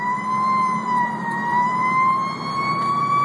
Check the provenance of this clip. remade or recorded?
remade